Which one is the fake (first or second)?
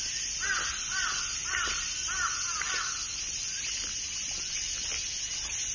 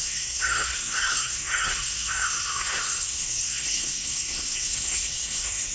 second